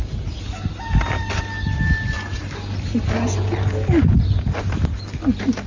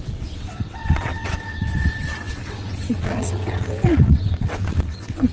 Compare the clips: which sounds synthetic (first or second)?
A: second